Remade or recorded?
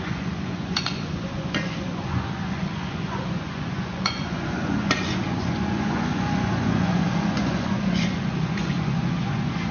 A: remade